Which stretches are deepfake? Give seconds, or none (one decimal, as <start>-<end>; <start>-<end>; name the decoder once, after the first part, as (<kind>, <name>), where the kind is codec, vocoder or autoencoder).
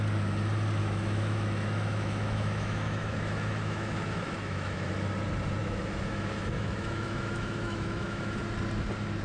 0.8-4.9 (autoencoder, DAC-VAE); 5.6-8.4